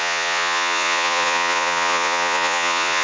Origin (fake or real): fake